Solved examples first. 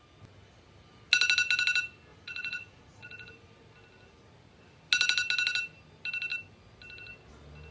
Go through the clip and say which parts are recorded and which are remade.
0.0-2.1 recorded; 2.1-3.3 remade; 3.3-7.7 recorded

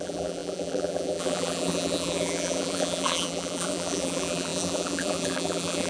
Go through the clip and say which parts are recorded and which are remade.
0.0-5.9 remade